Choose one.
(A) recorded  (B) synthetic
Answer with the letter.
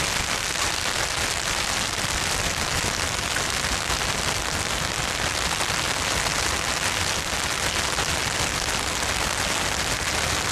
A